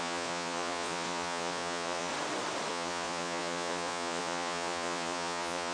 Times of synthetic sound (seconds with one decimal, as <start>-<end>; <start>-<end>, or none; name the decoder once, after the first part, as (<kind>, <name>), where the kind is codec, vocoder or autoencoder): 0.0-2.1 (vocoder, Vocos); 2.7-5.7